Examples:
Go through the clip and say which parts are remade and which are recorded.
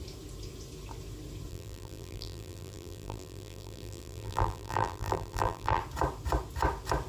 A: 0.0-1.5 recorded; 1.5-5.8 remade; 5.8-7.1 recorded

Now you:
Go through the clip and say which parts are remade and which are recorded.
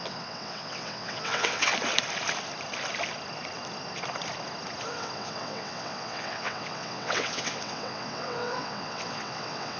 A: 0.0-1.7 remade; 1.7-4.9 recorded; 4.9-9.8 remade